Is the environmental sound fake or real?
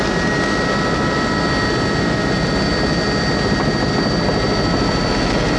real